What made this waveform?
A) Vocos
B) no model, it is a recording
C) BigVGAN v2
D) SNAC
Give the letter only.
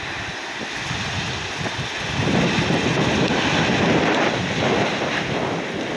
C